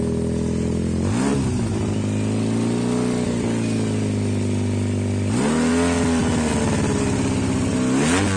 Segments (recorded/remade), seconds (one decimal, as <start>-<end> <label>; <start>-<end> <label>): 0.0-8.4 recorded